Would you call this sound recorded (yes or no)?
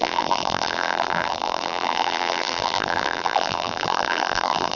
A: no